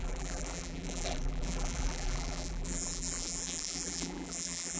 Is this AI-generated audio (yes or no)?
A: yes